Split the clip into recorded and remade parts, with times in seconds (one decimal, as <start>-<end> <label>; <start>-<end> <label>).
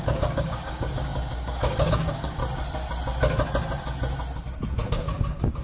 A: 0.0-2.4 remade; 2.4-4.9 recorded; 4.9-5.6 remade